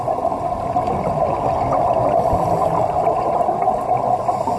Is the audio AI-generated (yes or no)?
no